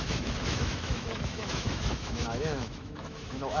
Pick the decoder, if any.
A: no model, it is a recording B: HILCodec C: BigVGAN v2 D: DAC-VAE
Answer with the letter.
D